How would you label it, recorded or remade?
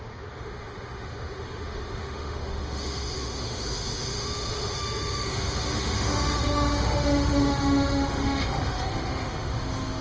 remade